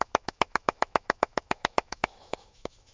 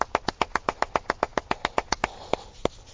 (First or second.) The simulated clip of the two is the first